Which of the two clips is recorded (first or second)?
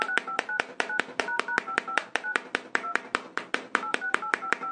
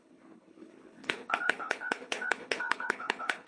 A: first